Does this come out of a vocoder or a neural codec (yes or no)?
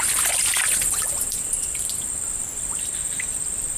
no